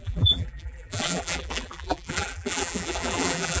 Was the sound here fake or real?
fake